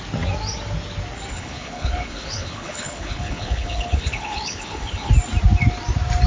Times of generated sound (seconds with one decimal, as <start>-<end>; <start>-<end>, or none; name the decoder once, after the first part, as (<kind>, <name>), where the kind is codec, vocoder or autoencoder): 1.3-5.1 (codec, HILCodec)

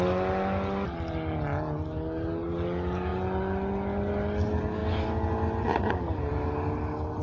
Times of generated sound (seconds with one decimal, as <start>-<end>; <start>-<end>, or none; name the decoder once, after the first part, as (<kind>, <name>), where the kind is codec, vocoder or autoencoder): none

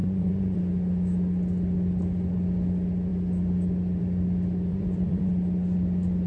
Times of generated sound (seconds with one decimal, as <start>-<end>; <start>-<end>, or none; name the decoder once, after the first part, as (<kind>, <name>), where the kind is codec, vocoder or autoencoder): 0.0-0.6 (vocoder, Vocos); 4.7-5.3

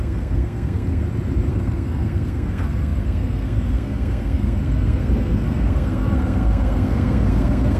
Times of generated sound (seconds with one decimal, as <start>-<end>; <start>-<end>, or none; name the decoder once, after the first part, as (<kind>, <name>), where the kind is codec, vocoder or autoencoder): 0.0-1.0 (codec, SNAC); 1.5-7.8

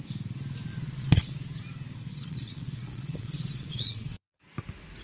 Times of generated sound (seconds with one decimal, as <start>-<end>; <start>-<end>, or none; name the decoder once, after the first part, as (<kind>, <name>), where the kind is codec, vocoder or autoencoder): 0.7-1.3 (vocoder, Vocos); 2.1-4.4

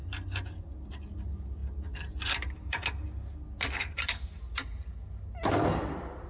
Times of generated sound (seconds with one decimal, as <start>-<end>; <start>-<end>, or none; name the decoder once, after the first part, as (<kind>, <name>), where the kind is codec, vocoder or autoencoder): none

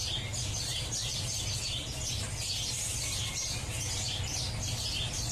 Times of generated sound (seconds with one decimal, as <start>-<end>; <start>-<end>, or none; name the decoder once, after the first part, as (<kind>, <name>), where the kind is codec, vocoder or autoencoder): none